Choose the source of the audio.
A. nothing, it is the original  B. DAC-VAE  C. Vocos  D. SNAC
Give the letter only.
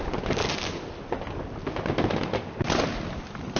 A